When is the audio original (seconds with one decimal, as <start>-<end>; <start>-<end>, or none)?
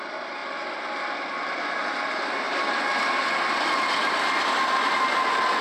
0.0-5.6